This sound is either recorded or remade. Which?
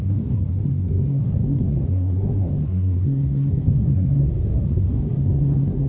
remade